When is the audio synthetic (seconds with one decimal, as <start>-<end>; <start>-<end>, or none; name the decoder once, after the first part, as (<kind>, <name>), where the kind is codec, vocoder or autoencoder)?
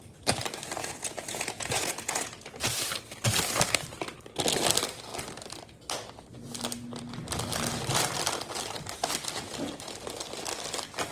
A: 0.8-2.7 (vocoder, Vocos)